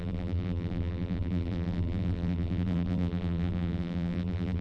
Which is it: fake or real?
fake